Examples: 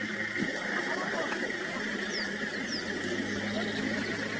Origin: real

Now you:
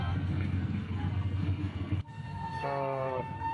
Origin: fake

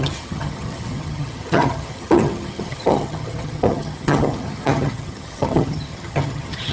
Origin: fake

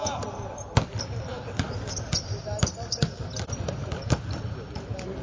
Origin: real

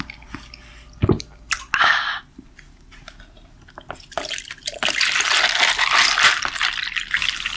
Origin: real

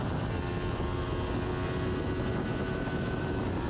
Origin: real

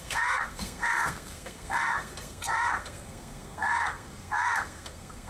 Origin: fake